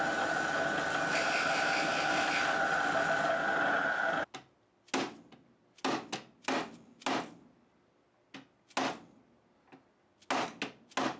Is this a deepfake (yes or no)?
no